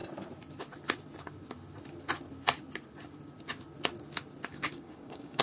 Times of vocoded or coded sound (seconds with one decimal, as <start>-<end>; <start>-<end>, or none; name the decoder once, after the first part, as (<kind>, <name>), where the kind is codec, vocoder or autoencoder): 4.5-5.4 (codec, DAC)